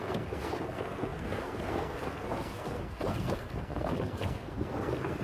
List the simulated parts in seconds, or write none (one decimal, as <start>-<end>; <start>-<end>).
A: 0.0-5.2